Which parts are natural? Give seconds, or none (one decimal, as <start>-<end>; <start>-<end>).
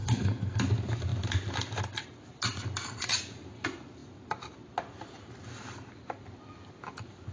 0.6-7.3